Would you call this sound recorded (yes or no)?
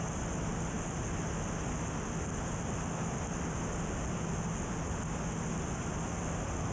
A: yes